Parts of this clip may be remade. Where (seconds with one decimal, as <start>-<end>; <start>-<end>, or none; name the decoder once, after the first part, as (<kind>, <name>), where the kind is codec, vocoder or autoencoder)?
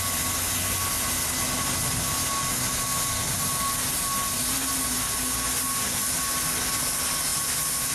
none